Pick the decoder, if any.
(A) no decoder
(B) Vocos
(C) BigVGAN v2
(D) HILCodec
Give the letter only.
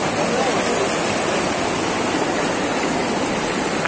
A